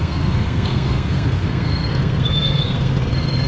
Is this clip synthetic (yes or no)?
yes